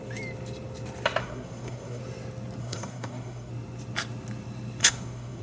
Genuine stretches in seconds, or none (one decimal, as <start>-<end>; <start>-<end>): 0.0-1.2; 2.0-2.6; 3.5-4.8